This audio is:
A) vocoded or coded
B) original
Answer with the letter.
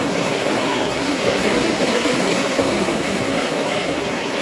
A